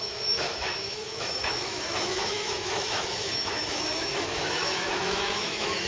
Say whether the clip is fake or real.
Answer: fake